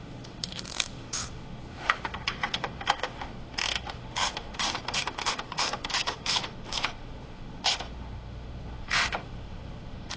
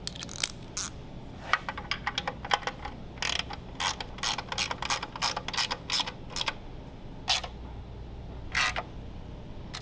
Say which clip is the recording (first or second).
second